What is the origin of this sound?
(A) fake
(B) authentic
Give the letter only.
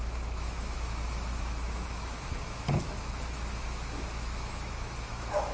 A